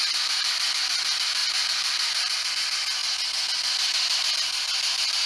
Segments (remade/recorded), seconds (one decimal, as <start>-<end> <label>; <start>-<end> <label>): 0.0-5.3 recorded